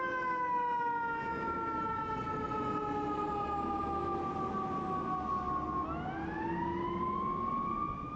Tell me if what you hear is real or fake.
real